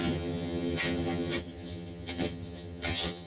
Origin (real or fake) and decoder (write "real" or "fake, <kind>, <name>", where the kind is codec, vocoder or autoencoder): fake, vocoder, HiFi-GAN